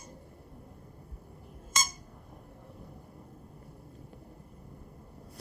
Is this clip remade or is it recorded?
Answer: remade